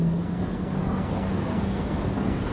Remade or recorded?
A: remade